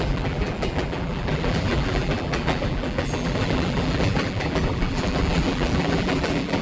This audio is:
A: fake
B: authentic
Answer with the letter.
A